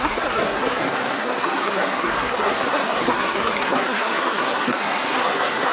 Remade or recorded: remade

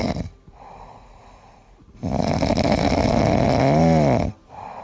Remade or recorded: recorded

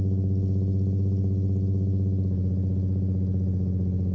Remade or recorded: recorded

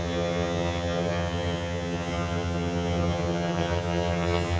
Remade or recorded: remade